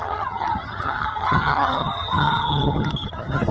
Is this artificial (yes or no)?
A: yes